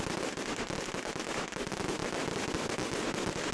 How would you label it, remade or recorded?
recorded